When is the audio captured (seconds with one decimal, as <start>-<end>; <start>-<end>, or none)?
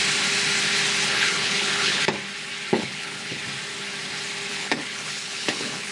0.0-1.1; 2.0-2.7; 3.4-4.5